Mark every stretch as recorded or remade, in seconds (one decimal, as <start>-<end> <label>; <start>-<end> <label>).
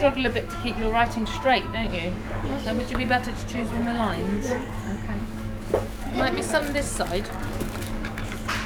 0.0-6.6 remade; 6.6-7.1 recorded; 7.1-8.7 remade